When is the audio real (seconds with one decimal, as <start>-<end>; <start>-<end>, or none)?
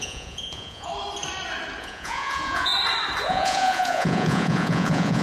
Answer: 0.9-1.8; 2.7-3.3